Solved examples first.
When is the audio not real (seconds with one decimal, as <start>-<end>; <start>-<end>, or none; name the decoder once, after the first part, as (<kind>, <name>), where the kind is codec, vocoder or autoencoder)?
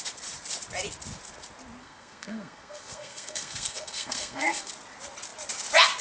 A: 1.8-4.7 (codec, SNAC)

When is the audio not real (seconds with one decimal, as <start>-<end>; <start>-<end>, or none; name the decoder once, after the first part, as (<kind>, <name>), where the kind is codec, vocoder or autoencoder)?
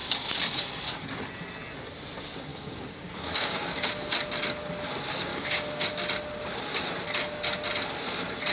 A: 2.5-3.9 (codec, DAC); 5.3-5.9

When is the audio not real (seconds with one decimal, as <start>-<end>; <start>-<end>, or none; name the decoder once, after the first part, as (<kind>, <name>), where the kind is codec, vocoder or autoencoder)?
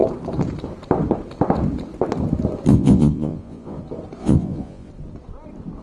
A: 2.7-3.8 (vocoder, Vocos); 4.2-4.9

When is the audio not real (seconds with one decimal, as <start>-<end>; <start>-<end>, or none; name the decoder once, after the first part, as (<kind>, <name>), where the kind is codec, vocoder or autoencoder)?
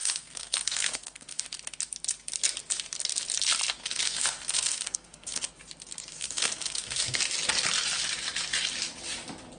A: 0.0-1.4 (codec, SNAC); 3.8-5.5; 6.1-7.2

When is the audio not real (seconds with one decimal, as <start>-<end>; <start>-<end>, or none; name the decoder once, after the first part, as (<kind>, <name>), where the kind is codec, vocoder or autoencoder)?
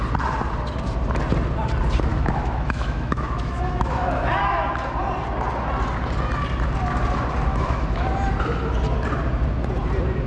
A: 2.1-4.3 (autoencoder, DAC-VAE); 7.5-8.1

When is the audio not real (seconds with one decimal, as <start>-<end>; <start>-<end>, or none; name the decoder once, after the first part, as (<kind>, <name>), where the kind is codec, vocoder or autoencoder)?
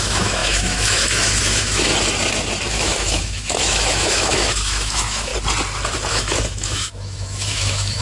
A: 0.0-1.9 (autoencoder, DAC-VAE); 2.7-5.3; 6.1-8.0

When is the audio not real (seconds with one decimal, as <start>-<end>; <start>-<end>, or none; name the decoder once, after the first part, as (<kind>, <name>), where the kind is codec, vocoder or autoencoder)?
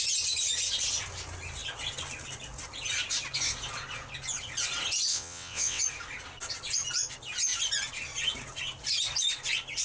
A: 5.1-5.8 (vocoder, WaveNeXt)